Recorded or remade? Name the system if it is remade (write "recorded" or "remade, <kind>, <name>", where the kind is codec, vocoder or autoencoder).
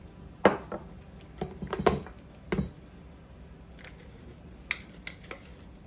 recorded